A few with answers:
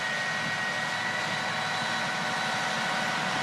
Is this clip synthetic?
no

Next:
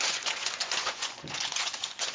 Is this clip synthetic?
yes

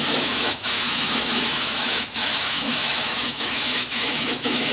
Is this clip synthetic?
yes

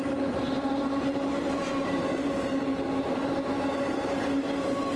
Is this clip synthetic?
no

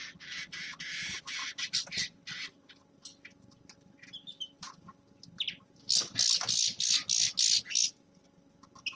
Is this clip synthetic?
no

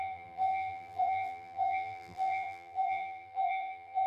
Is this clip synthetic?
yes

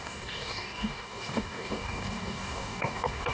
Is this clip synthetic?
yes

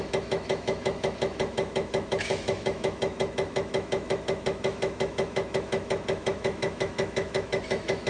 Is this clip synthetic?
yes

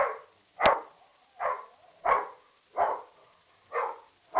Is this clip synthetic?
no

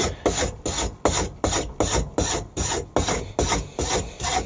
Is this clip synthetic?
no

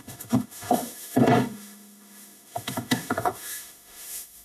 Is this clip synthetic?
yes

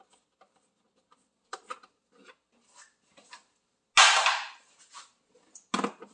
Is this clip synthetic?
no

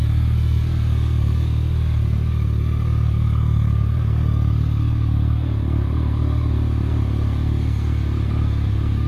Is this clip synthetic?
yes